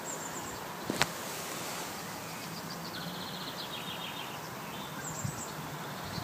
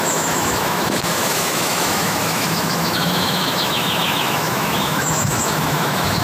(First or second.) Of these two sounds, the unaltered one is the first